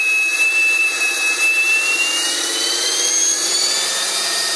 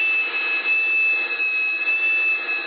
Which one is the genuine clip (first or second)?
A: second